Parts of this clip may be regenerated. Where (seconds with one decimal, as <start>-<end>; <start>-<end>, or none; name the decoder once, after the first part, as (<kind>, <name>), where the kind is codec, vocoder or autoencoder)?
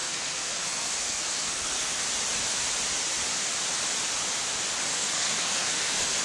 0.0-2.0 (codec, SNAC); 4.9-6.2